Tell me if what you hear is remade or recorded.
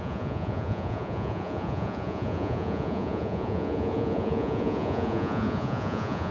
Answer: remade